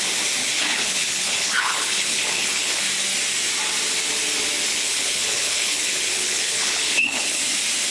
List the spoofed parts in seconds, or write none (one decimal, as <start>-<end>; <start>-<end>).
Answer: 0.4-2.8; 4.7-7.4